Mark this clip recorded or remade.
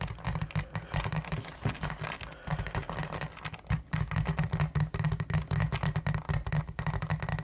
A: recorded